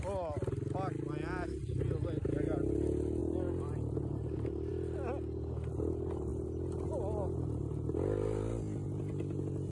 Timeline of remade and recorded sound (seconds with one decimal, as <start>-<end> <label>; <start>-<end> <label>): 0.0-9.7 recorded